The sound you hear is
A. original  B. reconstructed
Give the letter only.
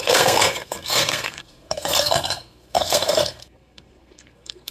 B